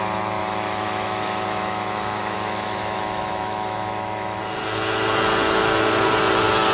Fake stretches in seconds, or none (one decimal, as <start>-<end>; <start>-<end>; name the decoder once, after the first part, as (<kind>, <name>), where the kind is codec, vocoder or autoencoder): 0.4-4.4 (autoencoder, DAC-VAE)